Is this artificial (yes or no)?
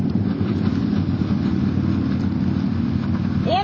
no